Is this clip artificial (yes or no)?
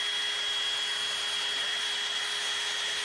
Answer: no